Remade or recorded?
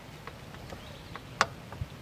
recorded